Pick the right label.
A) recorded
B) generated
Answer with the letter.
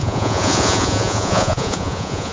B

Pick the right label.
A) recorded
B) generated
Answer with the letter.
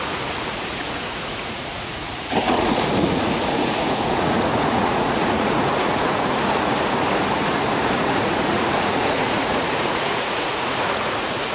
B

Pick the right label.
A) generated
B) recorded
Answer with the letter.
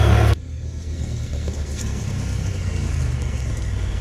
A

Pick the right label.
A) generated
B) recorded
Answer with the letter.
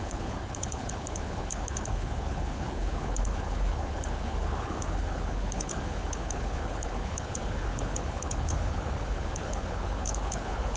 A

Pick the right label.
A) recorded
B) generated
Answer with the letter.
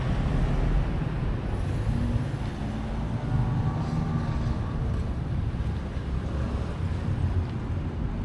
A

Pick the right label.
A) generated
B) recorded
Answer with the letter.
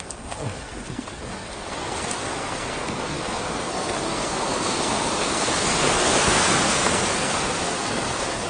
A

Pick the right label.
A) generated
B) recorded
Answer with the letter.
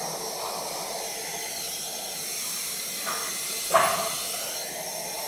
B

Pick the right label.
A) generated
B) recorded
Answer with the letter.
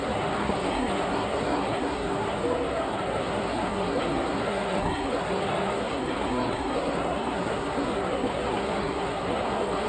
A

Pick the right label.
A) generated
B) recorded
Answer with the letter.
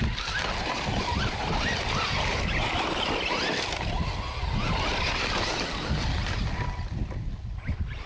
B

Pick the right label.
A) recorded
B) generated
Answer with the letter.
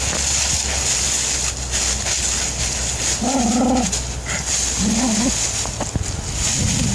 A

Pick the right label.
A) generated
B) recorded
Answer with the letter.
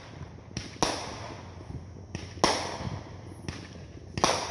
B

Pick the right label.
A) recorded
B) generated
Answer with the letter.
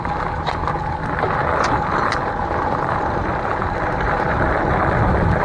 A